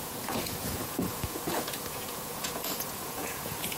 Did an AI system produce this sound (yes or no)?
yes